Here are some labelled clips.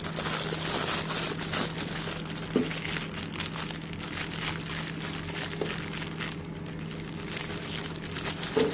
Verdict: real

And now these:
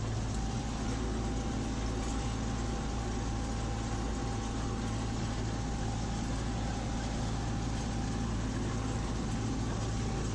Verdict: real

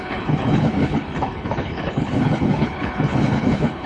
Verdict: fake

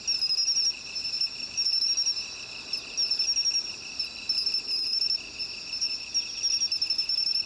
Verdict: real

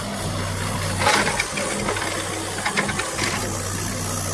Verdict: real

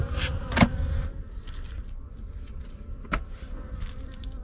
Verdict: real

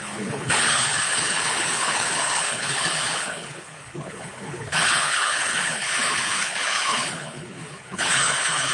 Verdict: fake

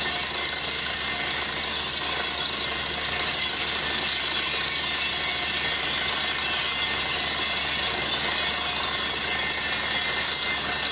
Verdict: real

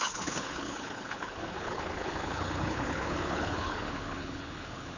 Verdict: fake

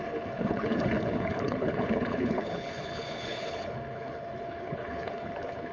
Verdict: fake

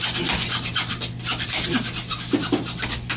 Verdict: real